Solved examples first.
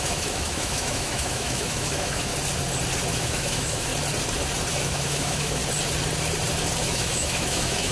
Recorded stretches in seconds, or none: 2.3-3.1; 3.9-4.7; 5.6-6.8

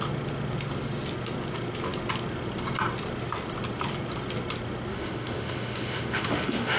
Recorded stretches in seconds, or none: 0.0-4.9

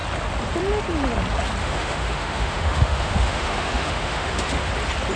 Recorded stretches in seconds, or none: 0.0-1.6; 4.7-5.2

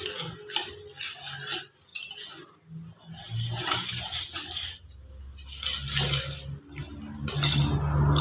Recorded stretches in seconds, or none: 0.0-8.2